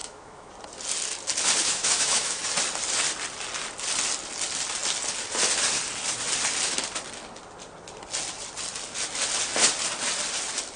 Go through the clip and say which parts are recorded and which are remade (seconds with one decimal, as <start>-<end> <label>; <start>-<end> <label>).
0.0-0.5 remade; 0.5-1.6 recorded; 1.6-2.4 remade; 2.4-10.8 recorded